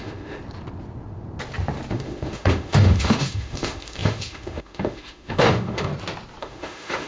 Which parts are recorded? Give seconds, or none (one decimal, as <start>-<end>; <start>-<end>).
0.4-1.9; 5.9-6.4